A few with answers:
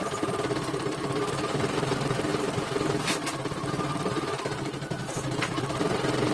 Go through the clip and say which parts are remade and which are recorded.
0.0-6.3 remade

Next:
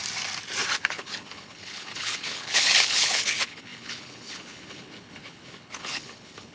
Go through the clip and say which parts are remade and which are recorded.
0.0-0.8 recorded; 0.8-6.5 remade

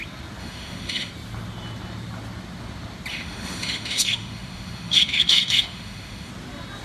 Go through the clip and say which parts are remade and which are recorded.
0.0-0.4 recorded; 0.4-1.1 remade; 1.1-3.1 recorded; 3.1-6.3 remade; 6.3-6.8 recorded